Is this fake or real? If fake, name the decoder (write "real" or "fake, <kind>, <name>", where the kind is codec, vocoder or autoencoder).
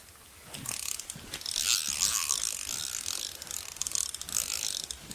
real